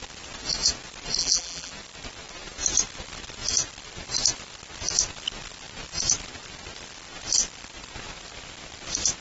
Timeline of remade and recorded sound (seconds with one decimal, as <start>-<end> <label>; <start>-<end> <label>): 0.0-1.2 recorded; 1.2-1.7 remade; 1.7-9.2 recorded